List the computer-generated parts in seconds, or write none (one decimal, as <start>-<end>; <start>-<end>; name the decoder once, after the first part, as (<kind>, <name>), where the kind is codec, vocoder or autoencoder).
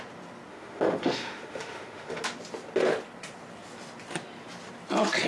0.5-2.2 (autoencoder, DAC-VAE)